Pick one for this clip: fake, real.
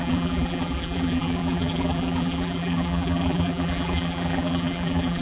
fake